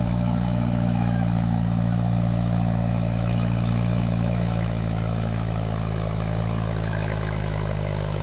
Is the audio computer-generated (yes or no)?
yes